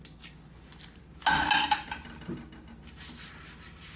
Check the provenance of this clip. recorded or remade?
recorded